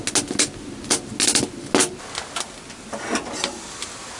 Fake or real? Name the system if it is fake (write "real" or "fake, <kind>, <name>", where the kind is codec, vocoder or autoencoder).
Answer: real